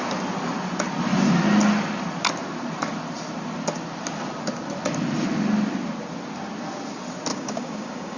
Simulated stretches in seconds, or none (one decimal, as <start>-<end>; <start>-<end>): 7.3-8.2

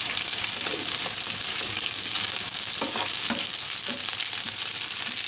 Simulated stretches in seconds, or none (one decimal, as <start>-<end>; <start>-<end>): 1.5-3.5

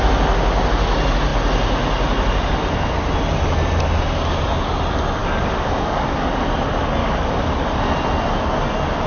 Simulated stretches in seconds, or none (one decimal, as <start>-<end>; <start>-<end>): 5.2-6.3; 7.0-7.8

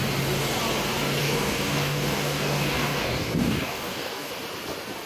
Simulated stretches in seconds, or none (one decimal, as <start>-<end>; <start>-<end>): 1.2-4.3

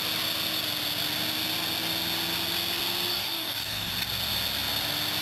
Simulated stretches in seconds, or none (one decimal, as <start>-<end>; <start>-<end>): 3.1-3.9